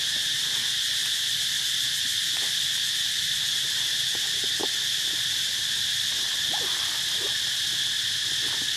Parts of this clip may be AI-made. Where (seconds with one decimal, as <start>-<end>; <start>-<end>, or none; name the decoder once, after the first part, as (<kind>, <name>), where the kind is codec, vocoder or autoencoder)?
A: none